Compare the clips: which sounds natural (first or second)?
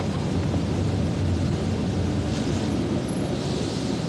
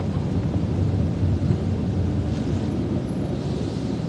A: first